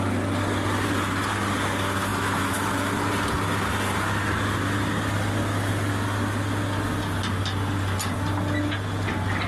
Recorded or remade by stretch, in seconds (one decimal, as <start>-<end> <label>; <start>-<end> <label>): 0.0-2.1 recorded; 2.1-2.7 remade; 2.7-9.5 recorded